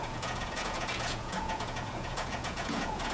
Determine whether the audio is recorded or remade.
remade